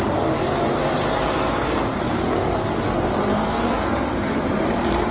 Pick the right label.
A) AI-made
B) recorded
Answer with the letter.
A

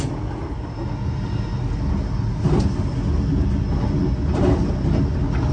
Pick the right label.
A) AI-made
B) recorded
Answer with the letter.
B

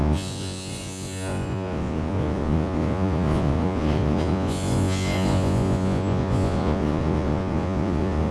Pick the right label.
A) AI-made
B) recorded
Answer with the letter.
A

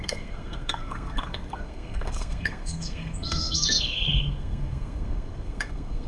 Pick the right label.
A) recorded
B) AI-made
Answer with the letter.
B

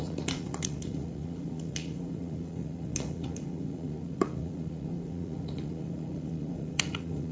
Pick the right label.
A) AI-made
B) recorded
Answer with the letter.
A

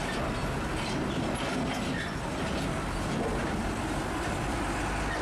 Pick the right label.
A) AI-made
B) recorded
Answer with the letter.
B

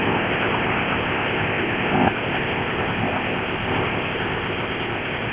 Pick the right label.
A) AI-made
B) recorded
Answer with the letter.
A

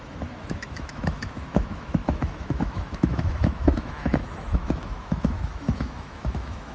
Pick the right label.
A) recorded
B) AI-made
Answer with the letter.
B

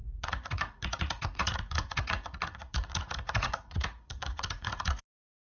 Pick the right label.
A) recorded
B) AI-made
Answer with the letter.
B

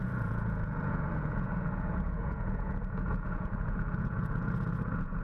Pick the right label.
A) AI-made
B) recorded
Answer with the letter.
A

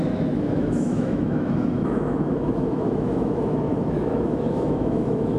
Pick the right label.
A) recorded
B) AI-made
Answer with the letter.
B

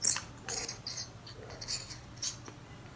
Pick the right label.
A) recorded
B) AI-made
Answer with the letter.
A